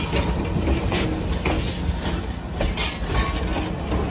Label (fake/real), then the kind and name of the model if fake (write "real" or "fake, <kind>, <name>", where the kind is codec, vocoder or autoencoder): real